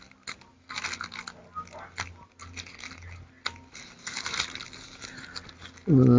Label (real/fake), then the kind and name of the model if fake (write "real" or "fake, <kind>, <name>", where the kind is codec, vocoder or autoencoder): real